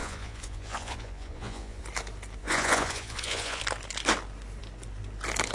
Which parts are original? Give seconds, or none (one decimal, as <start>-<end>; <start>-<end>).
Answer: 1.8-2.4; 3.6-5.5